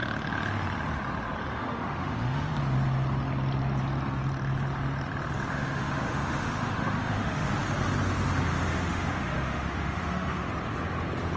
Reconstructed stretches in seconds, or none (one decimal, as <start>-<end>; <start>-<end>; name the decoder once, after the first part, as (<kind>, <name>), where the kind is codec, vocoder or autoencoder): 1.5-2.5 (autoencoder, DAC-VAE); 5.5-7.5; 8.5-10.5